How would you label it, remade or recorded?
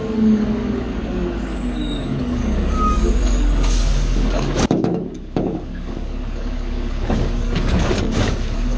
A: remade